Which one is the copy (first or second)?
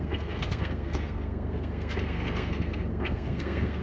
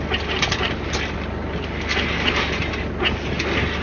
first